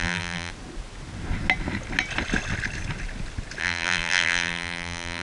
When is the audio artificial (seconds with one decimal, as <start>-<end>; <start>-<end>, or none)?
0.0-0.5; 3.6-5.2